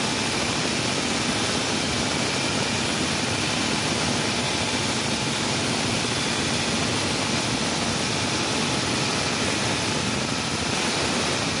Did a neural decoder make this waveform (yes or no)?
no